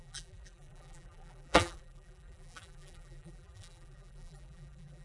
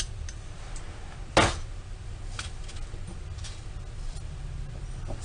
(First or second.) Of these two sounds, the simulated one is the first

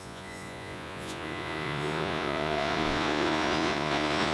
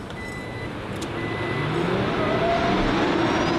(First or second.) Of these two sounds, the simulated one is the first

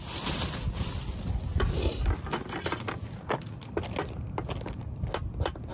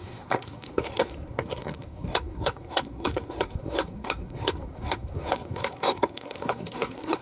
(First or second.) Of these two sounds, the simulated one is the second